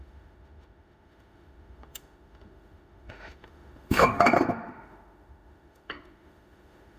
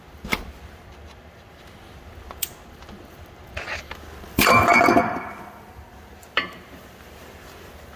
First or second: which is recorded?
second